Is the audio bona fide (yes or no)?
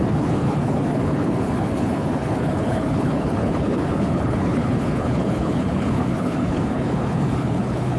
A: no